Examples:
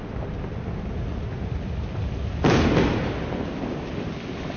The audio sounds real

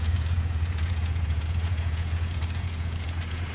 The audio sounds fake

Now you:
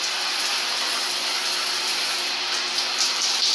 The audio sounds real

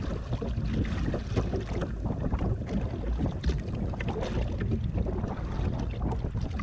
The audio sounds real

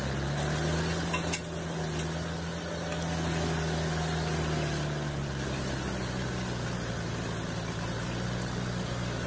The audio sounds real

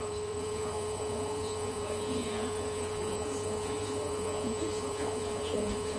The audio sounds fake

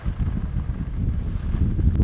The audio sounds real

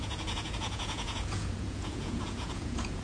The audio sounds fake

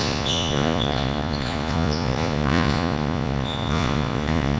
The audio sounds fake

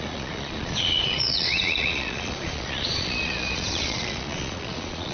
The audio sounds fake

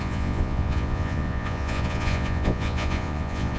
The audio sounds fake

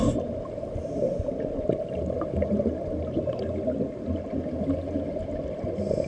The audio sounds real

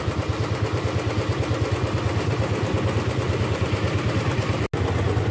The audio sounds real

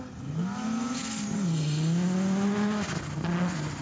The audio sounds real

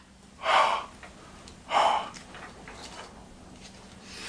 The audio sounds real